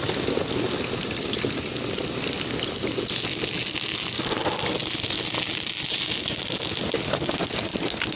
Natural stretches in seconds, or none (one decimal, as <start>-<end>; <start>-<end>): 0.0-8.2